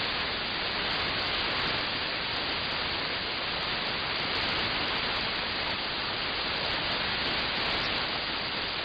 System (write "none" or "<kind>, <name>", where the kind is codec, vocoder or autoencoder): none